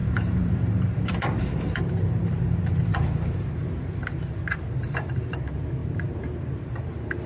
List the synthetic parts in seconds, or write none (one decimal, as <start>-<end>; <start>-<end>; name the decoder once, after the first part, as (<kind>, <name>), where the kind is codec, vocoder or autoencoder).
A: 0.0-3.6 (vocoder, BigVGAN v2); 4.3-7.3